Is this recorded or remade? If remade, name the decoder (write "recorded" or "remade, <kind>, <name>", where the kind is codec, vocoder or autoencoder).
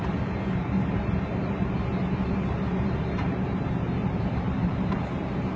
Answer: remade, vocoder, BigVGAN v2